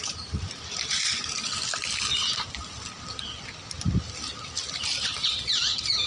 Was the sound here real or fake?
real